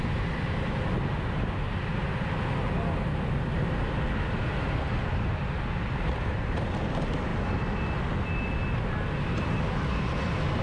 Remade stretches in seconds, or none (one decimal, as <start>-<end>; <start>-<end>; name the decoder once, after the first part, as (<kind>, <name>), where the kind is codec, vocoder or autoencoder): none